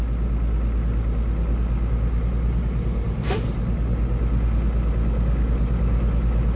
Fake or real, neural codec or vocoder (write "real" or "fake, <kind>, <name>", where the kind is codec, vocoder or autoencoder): real